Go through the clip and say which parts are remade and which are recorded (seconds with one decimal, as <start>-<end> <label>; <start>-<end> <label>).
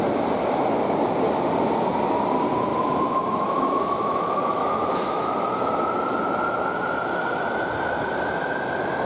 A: 0.0-2.7 recorded; 2.7-5.3 remade; 5.3-9.1 recorded